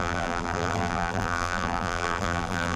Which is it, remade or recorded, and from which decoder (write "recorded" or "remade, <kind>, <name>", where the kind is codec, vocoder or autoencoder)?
remade, vocoder, BigVGAN v2